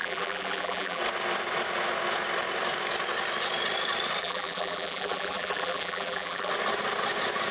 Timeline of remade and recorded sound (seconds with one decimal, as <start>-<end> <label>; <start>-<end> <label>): 0.0-1.0 remade; 1.0-4.2 recorded; 4.2-6.5 remade; 6.5-7.5 recorded